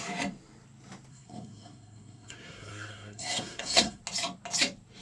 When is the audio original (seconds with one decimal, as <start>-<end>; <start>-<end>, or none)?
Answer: 0.0-1.1; 4.0-5.0